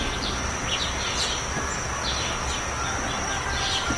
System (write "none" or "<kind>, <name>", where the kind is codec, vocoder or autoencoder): none